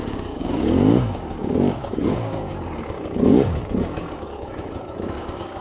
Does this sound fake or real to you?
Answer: fake